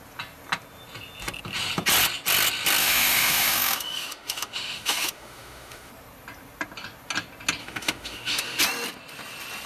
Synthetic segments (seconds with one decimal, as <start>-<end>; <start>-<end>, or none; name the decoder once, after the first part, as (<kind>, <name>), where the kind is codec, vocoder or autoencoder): 2.8-5.9 (autoencoder, DAC-VAE); 7.6-8.6